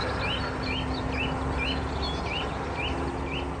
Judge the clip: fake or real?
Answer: real